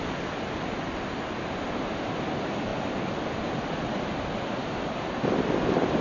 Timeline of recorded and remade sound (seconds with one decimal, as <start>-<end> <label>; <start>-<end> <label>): 0.0-6.0 recorded